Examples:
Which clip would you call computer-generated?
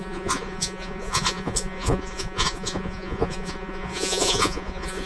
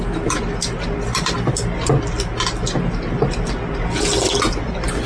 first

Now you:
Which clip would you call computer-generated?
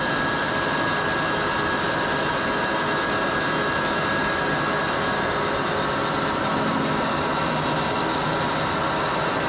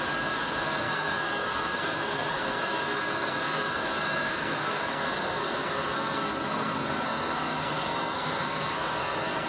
second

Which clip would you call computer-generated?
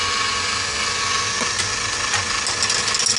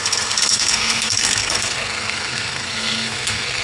second